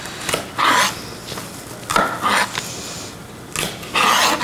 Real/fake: real